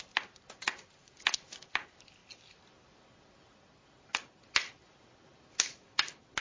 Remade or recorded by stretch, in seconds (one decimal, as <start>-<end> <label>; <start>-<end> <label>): 0.0-6.4 recorded